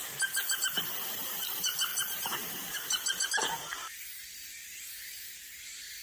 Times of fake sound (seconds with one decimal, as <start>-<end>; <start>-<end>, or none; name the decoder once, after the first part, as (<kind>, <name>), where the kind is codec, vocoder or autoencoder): 0.0-6.0 (vocoder, BigVGAN v2)

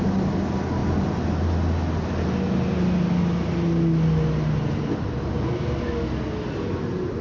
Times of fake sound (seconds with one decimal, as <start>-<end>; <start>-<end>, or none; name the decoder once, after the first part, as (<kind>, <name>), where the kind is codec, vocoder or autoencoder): none

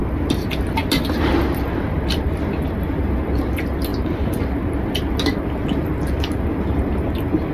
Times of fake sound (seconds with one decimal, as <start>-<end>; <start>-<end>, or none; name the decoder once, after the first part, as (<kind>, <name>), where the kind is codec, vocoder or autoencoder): none

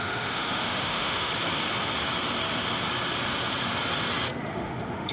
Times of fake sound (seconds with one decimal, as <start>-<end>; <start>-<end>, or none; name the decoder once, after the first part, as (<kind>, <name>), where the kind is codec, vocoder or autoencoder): 0.0-1.3 (autoencoder, DAC-VAE); 4.4-5.1

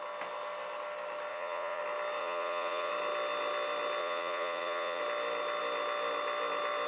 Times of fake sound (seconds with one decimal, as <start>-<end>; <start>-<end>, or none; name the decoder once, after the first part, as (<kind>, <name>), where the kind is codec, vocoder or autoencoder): 1.3-1.8 (vocoder, Vocos); 2.2-2.9; 4.0-5.0